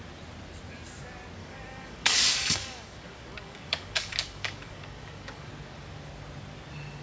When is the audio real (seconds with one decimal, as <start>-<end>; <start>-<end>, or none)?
0.0-1.4; 5.5-7.0